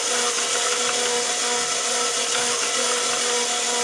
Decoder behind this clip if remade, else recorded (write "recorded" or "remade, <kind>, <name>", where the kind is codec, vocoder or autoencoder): recorded